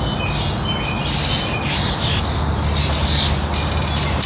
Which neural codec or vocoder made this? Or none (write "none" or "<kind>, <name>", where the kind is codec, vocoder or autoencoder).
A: none